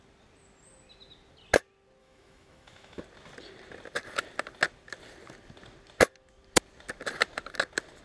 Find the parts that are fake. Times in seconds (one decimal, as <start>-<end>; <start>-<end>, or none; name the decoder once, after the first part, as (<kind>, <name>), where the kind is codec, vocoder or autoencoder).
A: 2.0-3.0 (autoencoder, DAC-VAE)